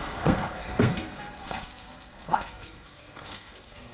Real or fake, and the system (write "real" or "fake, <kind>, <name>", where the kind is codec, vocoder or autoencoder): fake, codec, SNAC